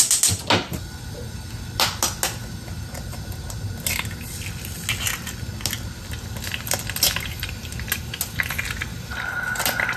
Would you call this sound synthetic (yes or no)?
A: no